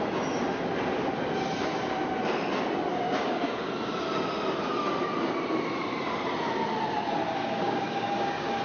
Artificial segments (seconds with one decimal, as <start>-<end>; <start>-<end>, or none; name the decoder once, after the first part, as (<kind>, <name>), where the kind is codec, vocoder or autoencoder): 2.9-3.7 (codec, DAC); 7.4-8.6